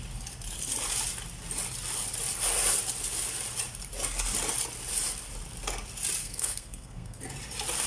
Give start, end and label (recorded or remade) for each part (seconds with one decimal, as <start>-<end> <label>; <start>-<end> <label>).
0.0-6.2 recorded; 6.2-7.2 remade; 7.2-7.9 recorded